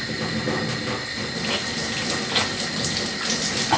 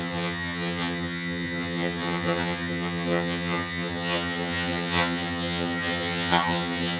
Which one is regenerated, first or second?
second